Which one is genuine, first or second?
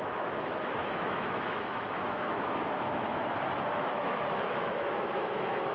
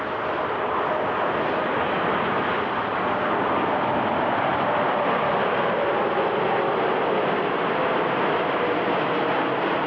second